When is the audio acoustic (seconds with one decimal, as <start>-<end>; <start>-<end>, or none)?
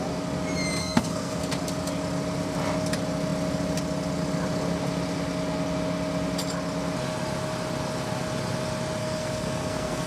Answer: 0.0-0.8; 1.4-9.0